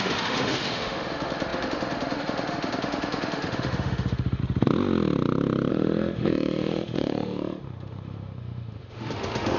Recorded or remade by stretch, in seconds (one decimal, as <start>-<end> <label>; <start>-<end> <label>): 0.0-4.4 remade; 4.4-5.7 recorded; 5.7-9.6 remade